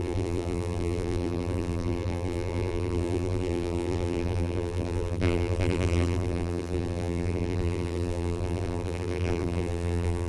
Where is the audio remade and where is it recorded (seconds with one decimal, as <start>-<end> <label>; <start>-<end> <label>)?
0.0-10.3 remade